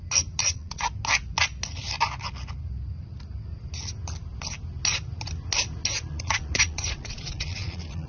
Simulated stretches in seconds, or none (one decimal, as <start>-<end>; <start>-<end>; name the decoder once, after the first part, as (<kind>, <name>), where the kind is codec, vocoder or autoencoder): 0.4-0.9 (vocoder, Vocos); 6.1-8.1